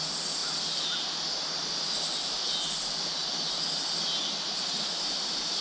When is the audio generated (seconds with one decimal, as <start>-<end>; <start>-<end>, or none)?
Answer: none